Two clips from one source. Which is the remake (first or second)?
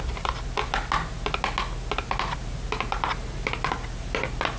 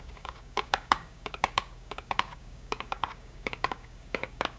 second